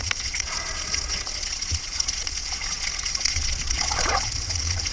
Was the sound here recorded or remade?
remade